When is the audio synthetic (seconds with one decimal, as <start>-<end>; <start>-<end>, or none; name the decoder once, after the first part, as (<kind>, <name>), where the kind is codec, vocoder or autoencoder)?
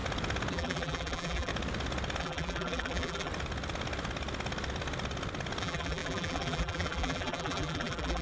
0.5-1.5 (vocoder, BigVGAN v2); 2.2-3.3; 5.6-8.2